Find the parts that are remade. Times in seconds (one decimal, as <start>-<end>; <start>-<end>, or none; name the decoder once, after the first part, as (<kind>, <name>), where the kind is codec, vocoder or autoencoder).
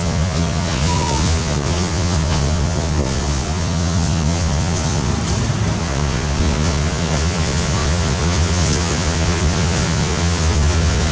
0.0-5.1 (vocoder, Vocos); 5.8-11.1